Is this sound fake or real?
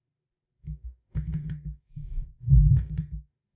fake